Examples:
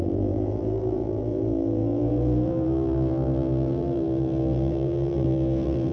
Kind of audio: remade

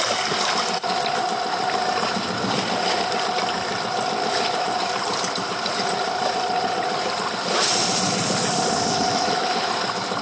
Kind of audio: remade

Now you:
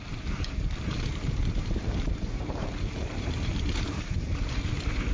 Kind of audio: remade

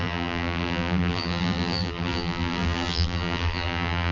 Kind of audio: remade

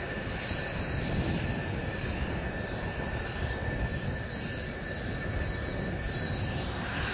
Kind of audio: remade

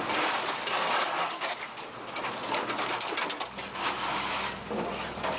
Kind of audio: recorded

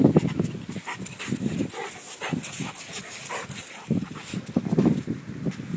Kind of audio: recorded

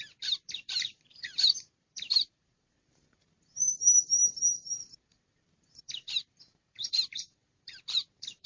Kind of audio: remade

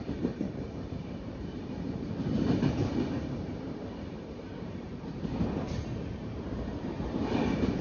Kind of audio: remade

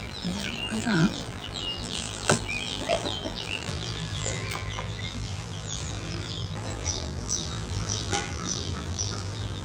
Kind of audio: remade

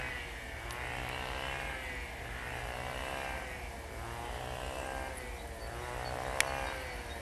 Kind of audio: recorded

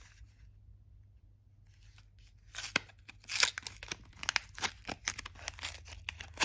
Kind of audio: recorded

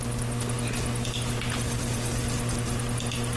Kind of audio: recorded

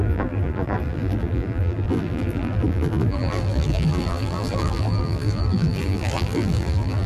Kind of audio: remade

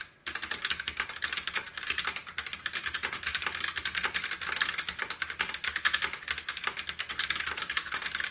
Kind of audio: recorded